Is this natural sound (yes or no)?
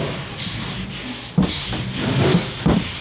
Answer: yes